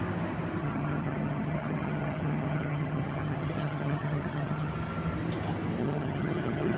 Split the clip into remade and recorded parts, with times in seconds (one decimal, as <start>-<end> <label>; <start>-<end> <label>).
0.0-0.6 recorded; 0.6-4.7 remade; 4.7-5.8 recorded; 5.8-6.8 remade